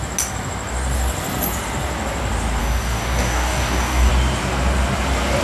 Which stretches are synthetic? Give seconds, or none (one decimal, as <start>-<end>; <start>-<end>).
2.6-4.1